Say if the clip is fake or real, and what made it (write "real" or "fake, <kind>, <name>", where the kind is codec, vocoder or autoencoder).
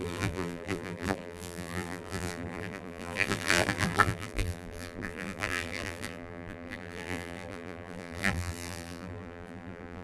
fake, vocoder, BigVGAN v2